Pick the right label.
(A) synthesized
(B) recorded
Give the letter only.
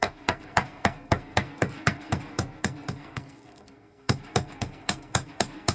A